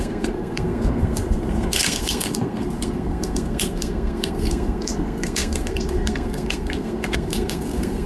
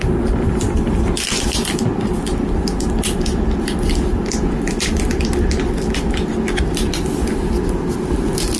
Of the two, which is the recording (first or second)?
second